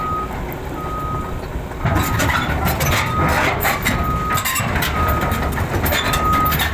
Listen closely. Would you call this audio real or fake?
real